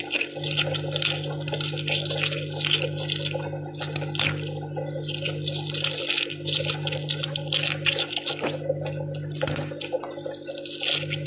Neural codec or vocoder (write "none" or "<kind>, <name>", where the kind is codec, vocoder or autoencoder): none